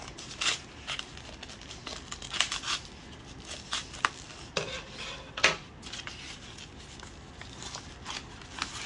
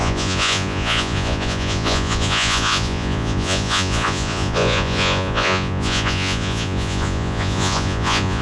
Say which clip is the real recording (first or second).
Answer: first